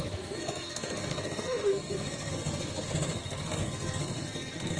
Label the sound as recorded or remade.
remade